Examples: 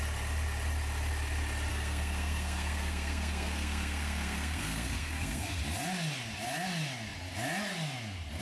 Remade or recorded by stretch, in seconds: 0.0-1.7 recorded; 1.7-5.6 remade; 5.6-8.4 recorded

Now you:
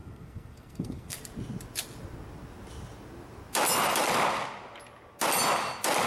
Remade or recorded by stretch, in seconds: 0.0-1.2 remade; 1.2-6.1 recorded

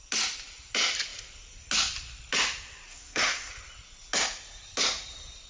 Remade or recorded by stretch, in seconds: 0.0-2.9 recorded; 2.9-3.5 remade; 3.5-5.5 recorded

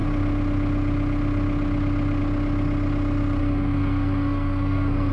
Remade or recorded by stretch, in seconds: 0.0-3.4 recorded; 3.4-5.1 remade

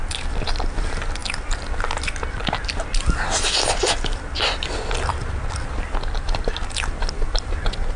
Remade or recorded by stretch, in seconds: 0.0-8.0 recorded

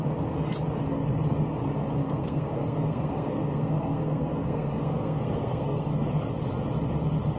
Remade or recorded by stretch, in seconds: 0.0-2.0 recorded; 2.0-5.9 remade; 5.9-7.4 recorded